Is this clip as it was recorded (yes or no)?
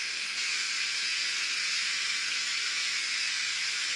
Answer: no